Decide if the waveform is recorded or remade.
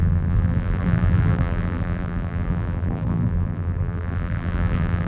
remade